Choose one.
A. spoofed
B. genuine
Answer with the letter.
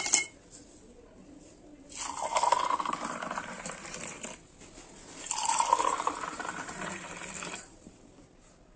B